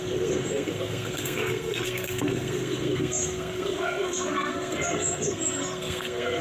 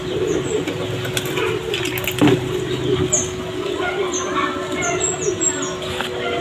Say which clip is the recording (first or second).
second